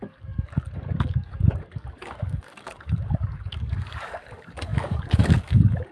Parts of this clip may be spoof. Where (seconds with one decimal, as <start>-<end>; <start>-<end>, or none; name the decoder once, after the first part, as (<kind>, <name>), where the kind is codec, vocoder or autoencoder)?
0.0-5.9 (codec, DAC)

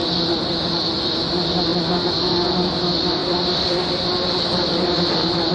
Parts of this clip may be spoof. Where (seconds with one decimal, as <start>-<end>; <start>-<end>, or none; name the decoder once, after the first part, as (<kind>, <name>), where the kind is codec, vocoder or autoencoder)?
3.2-3.9 (vocoder, BigVGAN v2)